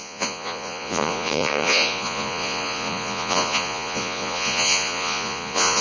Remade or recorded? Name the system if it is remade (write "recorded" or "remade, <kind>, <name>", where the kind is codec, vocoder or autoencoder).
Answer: remade, vocoder, Vocos